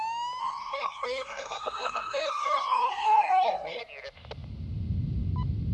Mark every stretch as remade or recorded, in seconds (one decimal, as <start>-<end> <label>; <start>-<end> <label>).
0.0-0.4 recorded; 0.4-3.8 remade; 3.8-5.7 recorded